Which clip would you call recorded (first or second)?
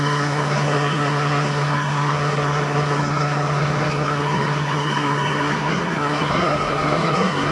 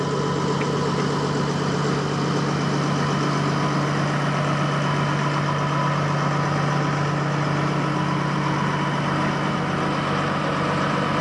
second